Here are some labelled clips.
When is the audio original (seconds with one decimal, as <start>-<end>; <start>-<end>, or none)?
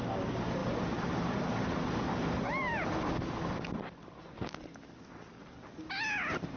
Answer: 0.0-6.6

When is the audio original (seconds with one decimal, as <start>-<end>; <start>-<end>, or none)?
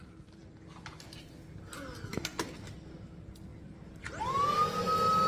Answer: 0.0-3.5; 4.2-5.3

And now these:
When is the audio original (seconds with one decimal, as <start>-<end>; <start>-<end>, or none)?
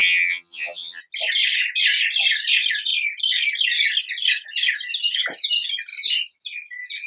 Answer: 1.0-7.1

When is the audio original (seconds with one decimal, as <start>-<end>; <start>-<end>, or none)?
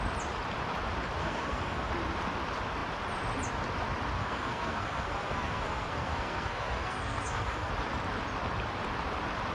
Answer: 0.0-1.2; 1.9-4.2; 7.7-9.5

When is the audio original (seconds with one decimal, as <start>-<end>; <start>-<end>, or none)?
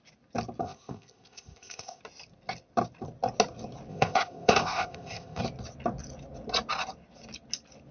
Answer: 0.0-0.6; 2.0-3.9; 5.4-7.9